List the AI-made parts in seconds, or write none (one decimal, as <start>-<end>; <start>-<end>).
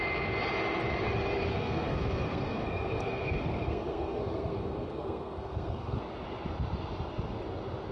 1.5-6.0